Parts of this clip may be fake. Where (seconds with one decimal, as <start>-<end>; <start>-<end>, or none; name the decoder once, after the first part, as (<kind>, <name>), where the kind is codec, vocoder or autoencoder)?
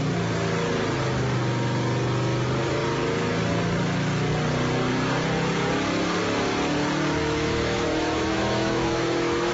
7.2-9.5 (autoencoder, DAC-VAE)